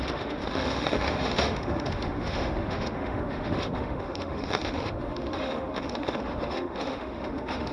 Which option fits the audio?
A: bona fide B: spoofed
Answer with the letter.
B